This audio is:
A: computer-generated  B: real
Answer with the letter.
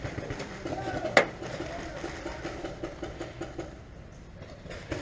B